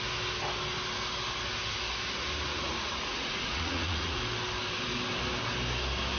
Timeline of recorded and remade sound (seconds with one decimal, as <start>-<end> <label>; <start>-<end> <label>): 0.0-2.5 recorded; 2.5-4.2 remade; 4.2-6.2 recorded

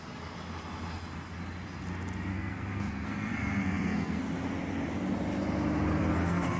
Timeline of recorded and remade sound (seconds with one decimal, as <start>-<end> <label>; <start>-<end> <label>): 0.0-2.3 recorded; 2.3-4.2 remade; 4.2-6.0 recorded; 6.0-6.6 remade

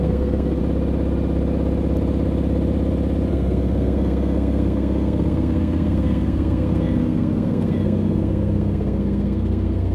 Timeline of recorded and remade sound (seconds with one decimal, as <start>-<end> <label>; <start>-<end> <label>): 0.0-0.6 remade; 0.6-3.3 recorded; 3.3-9.9 remade